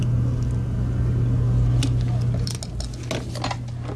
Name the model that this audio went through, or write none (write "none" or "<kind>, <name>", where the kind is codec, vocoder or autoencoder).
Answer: none